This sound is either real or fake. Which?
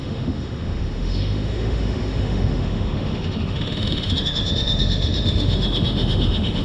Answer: fake